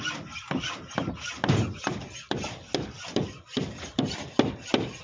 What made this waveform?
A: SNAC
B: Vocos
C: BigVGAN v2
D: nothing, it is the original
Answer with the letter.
D